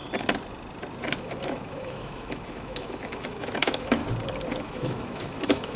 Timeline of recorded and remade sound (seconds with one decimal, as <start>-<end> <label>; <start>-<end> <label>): 0.0-1.2 recorded; 1.2-4.0 remade; 4.0-4.6 recorded; 4.6-5.8 remade